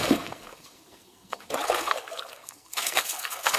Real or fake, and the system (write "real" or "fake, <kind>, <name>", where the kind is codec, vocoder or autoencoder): fake, codec, SNAC